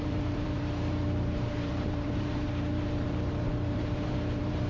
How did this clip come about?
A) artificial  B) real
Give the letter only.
A